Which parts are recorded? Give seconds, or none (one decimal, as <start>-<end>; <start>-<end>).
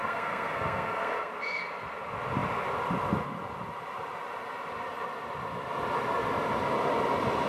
1.3-7.5